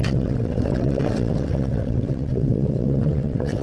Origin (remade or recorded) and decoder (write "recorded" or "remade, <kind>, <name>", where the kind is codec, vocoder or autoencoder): remade, vocoder, WaveNeXt